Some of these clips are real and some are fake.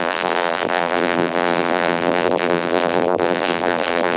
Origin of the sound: fake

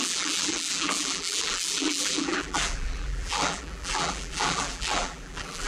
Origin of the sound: fake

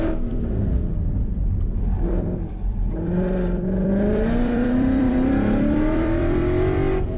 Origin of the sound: fake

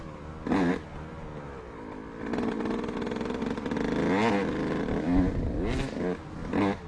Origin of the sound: real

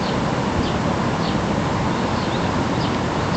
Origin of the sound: real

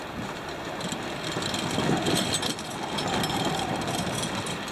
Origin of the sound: real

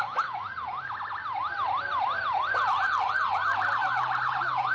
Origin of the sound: real